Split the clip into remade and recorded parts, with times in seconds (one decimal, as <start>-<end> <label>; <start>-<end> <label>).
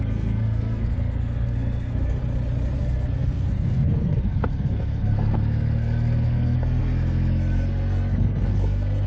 0.0-2.2 remade; 2.2-2.8 recorded; 2.8-9.1 remade